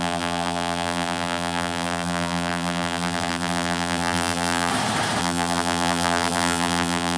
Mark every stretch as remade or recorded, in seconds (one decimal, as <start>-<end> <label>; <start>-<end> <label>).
0.0-4.7 remade; 4.7-5.2 recorded; 5.2-7.2 remade